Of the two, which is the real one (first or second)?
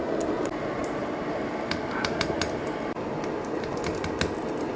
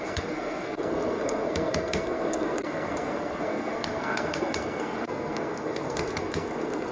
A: first